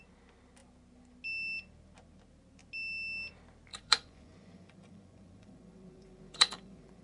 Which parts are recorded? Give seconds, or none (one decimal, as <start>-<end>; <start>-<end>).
0.0-3.7